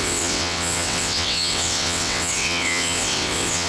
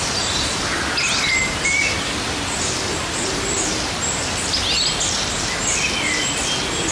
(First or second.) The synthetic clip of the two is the first